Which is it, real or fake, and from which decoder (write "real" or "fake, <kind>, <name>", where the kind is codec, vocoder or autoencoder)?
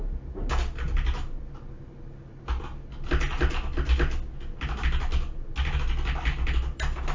real